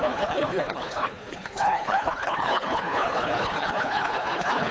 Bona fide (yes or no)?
no